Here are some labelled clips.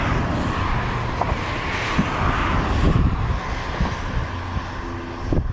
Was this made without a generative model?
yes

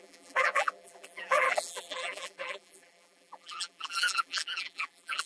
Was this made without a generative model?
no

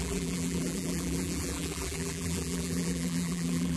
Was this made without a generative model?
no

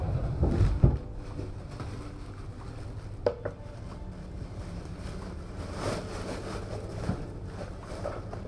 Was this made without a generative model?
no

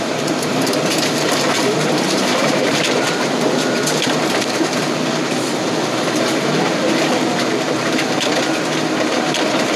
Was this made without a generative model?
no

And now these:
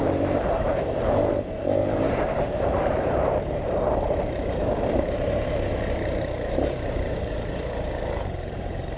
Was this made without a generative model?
no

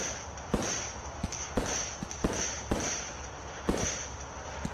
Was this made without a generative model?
yes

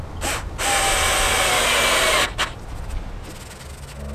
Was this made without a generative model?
yes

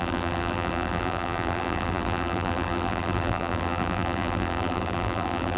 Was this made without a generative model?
no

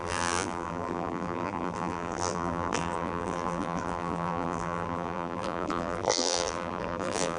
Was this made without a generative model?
no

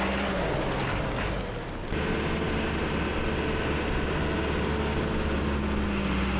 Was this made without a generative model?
yes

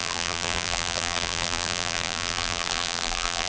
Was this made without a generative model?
no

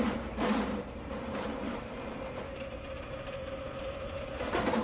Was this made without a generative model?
no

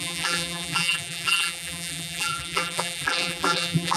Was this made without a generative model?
no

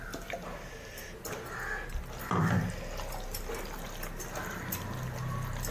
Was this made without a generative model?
yes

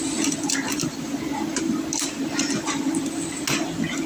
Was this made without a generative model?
yes